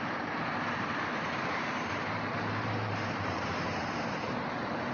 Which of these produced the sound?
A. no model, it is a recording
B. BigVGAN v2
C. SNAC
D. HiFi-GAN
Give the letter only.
B